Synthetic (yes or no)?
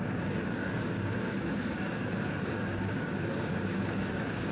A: yes